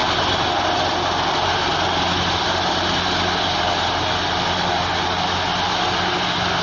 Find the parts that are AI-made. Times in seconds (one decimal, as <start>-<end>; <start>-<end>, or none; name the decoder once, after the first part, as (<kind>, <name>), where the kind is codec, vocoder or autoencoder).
none

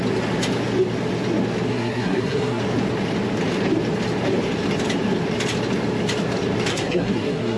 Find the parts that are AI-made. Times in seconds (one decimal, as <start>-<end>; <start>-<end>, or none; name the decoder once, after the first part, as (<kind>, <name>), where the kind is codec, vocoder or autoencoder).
1.7-2.6 (codec, SNAC); 6.7-7.6

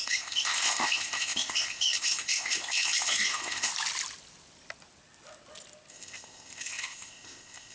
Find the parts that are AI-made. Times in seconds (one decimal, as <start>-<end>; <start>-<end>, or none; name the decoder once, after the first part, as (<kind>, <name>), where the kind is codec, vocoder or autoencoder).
0.0-3.7 (codec, ZipCodec); 5.9-7.7

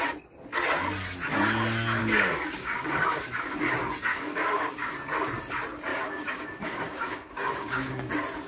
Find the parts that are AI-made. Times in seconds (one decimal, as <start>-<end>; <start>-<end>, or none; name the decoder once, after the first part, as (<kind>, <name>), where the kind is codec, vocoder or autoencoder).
2.0-3.6 (codec, DAC); 4.1-4.9; 5.9-8.1

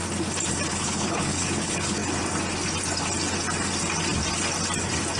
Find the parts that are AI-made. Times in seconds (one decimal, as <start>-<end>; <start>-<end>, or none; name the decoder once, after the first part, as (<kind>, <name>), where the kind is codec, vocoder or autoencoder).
0.7-2.0 (codec, HILCodec)

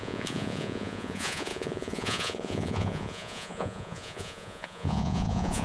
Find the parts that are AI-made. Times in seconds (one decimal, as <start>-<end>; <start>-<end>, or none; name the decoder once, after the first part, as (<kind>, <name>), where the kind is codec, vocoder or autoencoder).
0.0-5.6 (vocoder, Vocos)

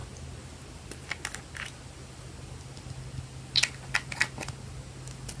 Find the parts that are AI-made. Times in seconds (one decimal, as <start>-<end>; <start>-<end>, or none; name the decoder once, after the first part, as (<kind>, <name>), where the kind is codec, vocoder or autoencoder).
none

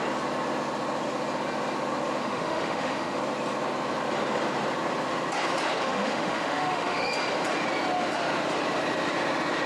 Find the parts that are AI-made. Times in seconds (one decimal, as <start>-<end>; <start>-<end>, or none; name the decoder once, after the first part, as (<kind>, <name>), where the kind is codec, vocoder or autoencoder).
2.2-3.2 (autoencoder, DAC-VAE); 5.8-7.1